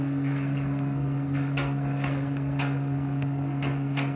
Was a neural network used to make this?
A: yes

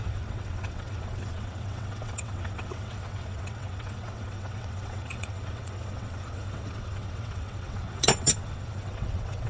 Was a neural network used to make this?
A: yes